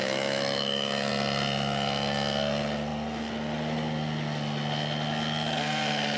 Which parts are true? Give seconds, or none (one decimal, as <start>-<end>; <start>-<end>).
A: 1.1-6.2